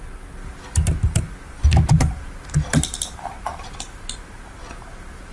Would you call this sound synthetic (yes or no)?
no